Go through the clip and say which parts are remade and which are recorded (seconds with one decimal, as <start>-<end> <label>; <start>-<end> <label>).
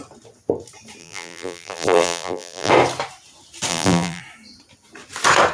0.0-1.0 recorded; 1.0-2.7 remade; 2.7-3.7 recorded; 3.7-4.2 remade; 4.2-5.5 recorded